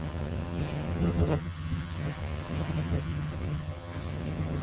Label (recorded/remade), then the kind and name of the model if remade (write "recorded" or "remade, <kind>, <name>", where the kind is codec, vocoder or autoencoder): remade, vocoder, HiFi-GAN